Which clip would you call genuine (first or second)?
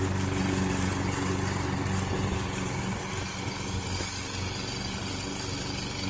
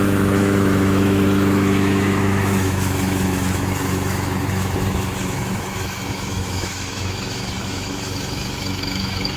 first